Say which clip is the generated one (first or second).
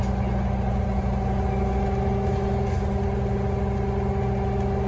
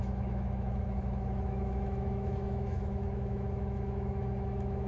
second